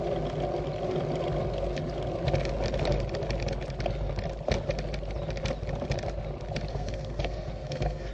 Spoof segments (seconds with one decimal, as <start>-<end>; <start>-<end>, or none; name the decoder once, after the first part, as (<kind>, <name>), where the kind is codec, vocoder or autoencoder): 6.7-8.1 (codec, SNAC)